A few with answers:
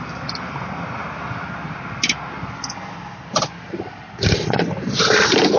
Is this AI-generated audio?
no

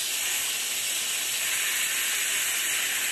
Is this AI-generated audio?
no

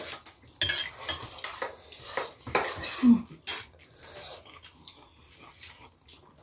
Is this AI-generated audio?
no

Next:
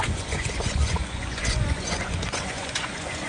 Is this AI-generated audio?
yes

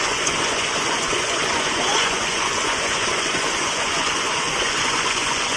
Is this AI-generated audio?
yes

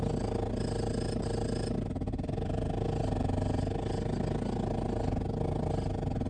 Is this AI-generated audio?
no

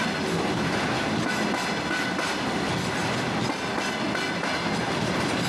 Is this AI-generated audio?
no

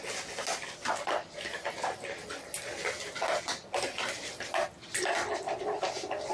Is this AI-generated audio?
no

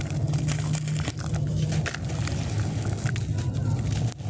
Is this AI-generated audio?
no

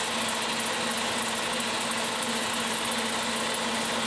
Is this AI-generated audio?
no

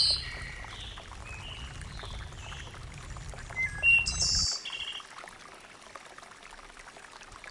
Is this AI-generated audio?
no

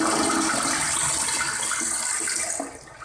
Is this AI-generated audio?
no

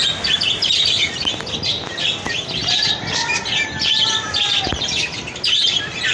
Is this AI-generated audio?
no